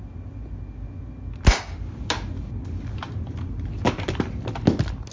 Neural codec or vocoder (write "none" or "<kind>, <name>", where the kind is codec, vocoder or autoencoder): none